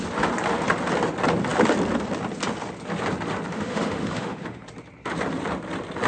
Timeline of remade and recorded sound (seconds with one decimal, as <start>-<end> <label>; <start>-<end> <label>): 0.0-3.5 recorded; 3.5-4.6 remade; 4.6-6.1 recorded